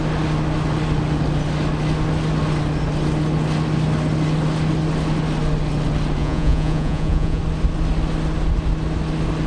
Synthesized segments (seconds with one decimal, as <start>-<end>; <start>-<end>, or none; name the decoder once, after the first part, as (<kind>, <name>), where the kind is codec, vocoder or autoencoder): 6.2-7.4 (vocoder, Vocos)